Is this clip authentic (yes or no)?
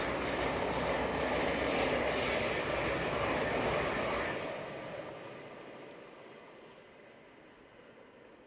yes